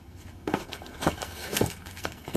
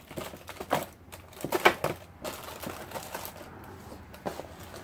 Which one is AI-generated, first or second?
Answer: first